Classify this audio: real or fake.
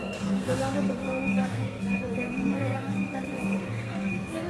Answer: fake